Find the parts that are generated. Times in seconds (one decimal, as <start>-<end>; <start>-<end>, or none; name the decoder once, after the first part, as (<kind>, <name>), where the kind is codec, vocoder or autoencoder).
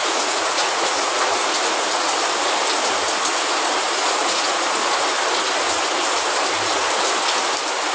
0.0-2.1 (vocoder, Vocos); 4.0-4.9